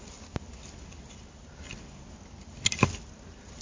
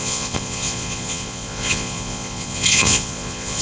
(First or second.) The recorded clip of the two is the first